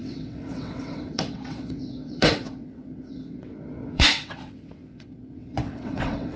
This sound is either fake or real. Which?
fake